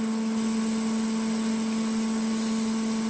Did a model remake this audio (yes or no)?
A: no